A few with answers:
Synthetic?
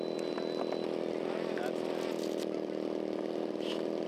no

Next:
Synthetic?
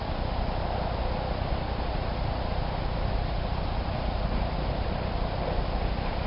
no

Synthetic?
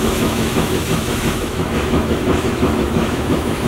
yes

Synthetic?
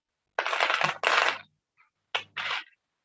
no